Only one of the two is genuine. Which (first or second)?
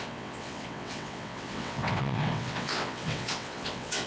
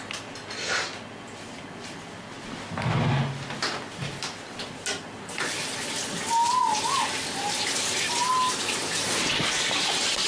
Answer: second